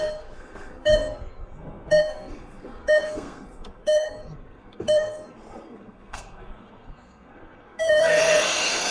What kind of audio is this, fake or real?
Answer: fake